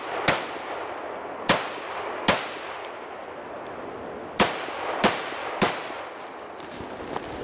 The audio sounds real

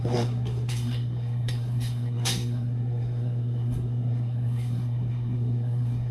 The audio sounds fake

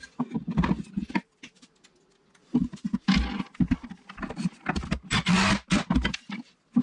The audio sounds real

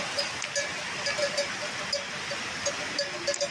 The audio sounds real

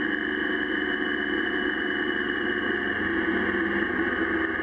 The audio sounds real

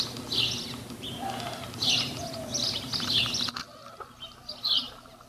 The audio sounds real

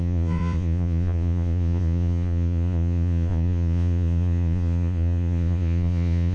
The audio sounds fake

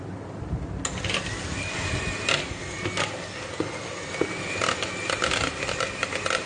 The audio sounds real